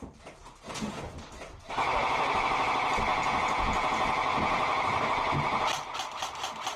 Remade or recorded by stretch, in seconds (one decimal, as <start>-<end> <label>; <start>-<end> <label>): 0.0-0.4 recorded; 0.4-1.2 remade; 1.2-3.1 recorded; 3.1-4.8 remade; 4.8-6.8 recorded